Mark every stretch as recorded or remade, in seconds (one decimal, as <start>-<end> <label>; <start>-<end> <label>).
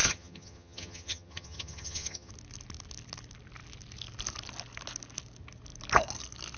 0.0-2.3 remade; 2.3-6.6 recorded